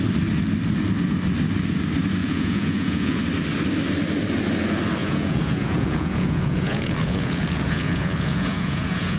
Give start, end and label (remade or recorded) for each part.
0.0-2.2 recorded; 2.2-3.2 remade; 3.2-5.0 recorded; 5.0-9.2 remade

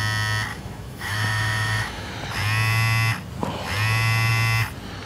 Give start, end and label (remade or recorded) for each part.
0.0-0.5 recorded; 0.5-2.1 remade; 2.1-5.1 recorded

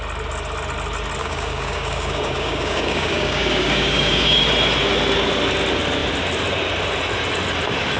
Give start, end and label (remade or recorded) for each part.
0.0-1.2 recorded; 1.2-4.4 remade; 4.4-8.0 recorded

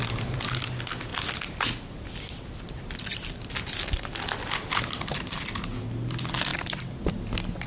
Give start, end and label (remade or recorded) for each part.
0.0-6.5 recorded; 6.5-7.1 remade; 7.1-7.7 recorded

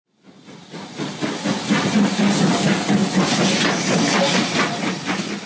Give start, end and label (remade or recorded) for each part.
0.0-5.5 recorded

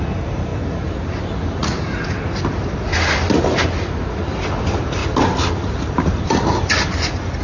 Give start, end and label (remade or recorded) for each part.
0.0-0.5 remade; 0.5-2.4 recorded; 2.4-2.9 remade; 2.9-4.6 recorded; 4.6-5.0 remade; 5.0-5.7 recorded; 5.7-7.4 remade